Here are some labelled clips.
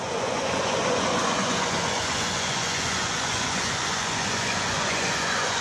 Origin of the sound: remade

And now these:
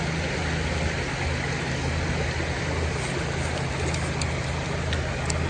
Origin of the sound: recorded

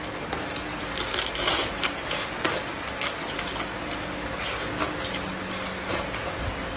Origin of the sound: recorded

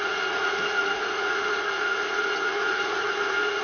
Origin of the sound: remade